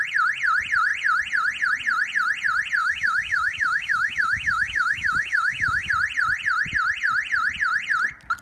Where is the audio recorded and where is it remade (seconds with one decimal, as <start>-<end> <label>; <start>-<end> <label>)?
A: 0.0-2.8 recorded; 2.8-5.9 remade; 5.9-8.4 recorded